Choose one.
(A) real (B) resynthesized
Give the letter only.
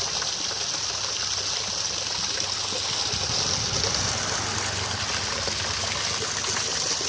A